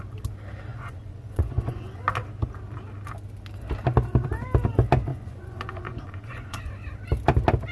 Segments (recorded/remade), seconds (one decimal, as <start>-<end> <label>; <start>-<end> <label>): 0.0-0.7 recorded; 0.7-2.0 remade; 2.0-5.1 recorded; 5.1-6.7 remade; 6.7-7.7 recorded